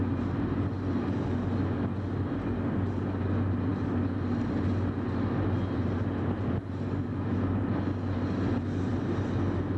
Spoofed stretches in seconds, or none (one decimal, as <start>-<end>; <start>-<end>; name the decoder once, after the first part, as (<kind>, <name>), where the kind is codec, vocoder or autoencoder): none